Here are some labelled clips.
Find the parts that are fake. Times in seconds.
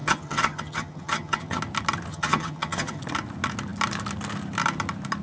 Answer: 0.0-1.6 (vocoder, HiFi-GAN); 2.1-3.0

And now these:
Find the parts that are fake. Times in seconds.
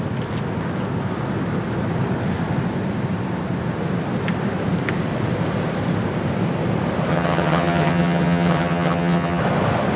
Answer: 7.1-9.4 (vocoder, HiFi-GAN)